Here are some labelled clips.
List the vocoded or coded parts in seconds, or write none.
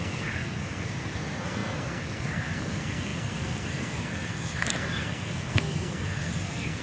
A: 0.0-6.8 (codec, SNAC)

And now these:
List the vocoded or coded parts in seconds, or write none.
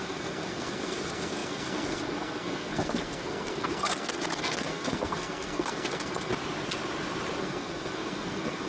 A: 0.0-6.3 (codec, SNAC); 7.4-8.7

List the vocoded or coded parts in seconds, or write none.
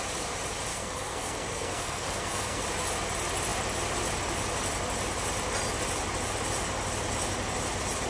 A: 0.7-2.6 (codec, SNAC)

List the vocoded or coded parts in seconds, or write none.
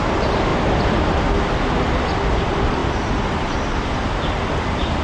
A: none